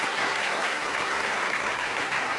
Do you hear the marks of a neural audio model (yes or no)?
yes